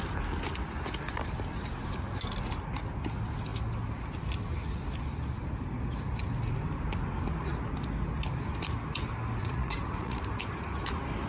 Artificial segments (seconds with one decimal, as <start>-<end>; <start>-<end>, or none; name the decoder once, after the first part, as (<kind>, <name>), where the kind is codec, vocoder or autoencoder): 9.4-10.2 (vocoder, Vocos)